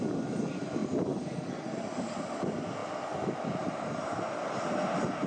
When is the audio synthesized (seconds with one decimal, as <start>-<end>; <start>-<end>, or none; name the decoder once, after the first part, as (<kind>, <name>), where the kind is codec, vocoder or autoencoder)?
none